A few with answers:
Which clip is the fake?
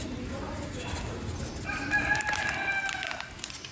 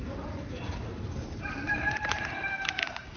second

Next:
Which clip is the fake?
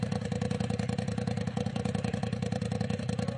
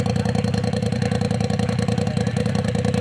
first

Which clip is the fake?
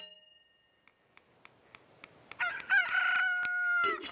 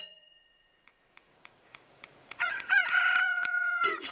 second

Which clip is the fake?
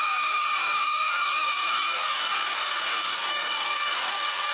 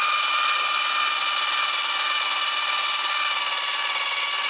first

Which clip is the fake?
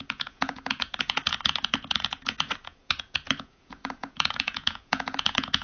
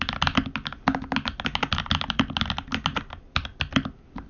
first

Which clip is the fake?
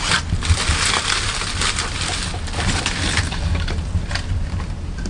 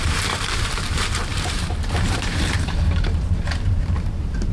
second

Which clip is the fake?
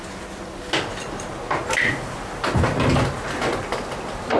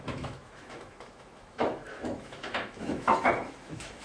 second